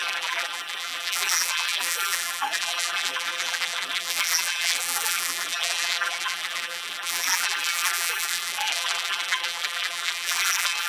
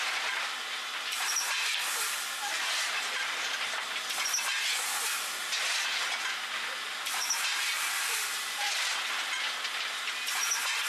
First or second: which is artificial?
first